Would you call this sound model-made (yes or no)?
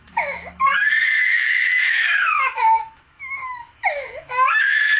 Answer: yes